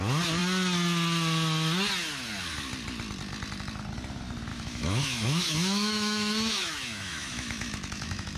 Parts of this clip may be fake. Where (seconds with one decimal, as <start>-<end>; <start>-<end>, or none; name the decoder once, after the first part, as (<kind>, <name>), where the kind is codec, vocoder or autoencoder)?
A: 4.5-8.4 (autoencoder, DAC-VAE)